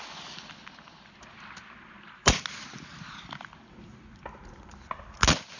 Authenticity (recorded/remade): recorded